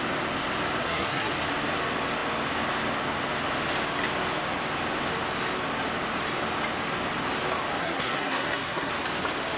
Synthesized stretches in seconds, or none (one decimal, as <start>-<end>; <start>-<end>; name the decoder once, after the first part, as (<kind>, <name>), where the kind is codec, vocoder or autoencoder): 0.8-1.3 (codec, SNAC); 7.8-8.9